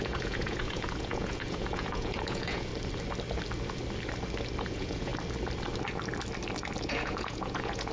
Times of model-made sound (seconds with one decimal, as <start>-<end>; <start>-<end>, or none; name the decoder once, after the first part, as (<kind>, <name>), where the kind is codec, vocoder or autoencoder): 0.0-2.7 (vocoder, Vocos); 4.6-5.1; 6.8-7.9